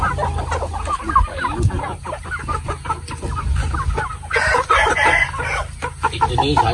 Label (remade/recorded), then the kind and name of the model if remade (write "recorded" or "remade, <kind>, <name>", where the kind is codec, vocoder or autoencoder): recorded